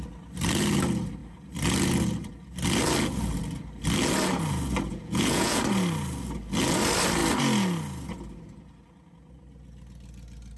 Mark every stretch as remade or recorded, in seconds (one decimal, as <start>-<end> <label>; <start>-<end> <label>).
0.0-4.9 recorded; 4.9-5.6 remade; 5.6-10.6 recorded